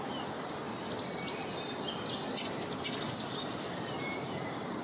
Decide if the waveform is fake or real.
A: real